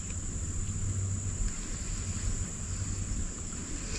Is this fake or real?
real